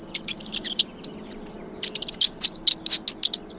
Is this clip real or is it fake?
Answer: real